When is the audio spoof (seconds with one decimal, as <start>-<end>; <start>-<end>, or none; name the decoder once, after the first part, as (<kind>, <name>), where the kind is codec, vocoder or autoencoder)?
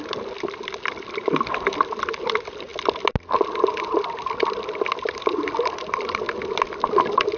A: none